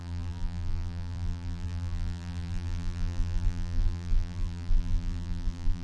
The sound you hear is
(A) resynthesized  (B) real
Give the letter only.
A